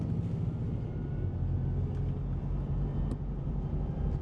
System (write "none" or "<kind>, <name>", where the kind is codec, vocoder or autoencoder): none